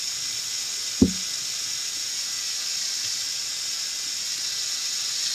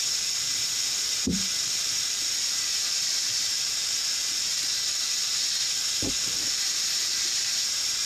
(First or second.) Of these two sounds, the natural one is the first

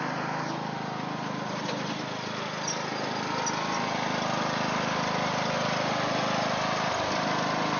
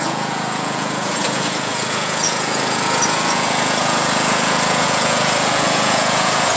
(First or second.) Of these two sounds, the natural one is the first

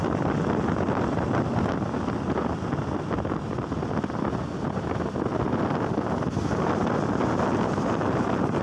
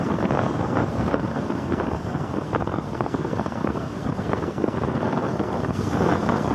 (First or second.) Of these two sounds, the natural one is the first